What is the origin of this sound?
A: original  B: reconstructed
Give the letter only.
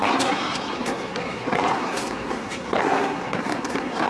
B